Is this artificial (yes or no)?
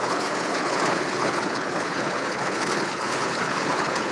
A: yes